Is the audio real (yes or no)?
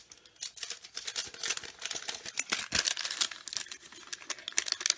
yes